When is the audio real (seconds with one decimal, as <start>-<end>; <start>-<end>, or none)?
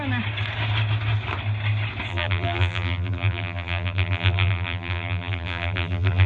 0.0-2.1